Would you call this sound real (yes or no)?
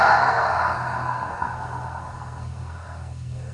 no